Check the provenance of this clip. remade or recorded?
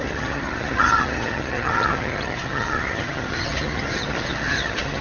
remade